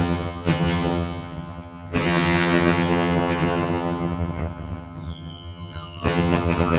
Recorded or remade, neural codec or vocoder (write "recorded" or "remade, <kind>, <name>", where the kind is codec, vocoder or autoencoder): remade, vocoder, HiFi-GAN